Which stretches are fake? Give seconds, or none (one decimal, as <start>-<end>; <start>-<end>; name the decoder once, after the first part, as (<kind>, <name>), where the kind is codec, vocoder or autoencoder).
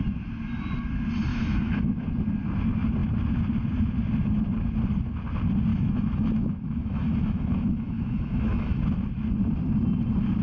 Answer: 1.3-1.9 (autoencoder, DAC-VAE); 5.7-8.8